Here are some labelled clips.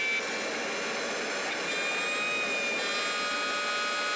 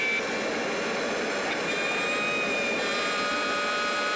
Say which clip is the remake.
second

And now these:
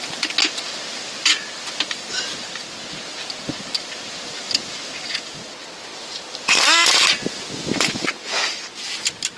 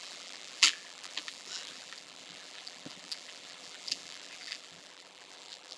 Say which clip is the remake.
second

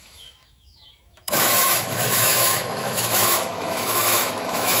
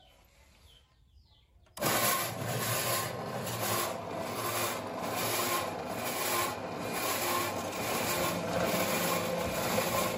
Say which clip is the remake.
first